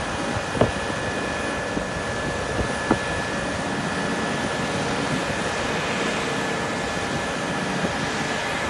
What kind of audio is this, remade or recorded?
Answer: recorded